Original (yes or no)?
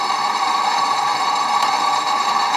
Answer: no